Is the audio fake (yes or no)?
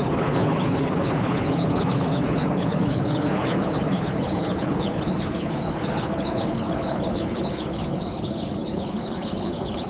yes